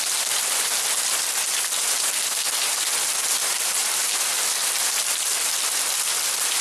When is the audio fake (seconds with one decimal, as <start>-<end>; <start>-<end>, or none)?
none